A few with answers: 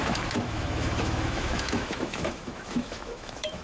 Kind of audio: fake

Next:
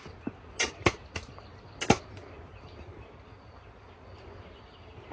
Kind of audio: real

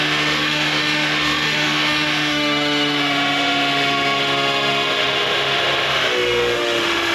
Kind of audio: fake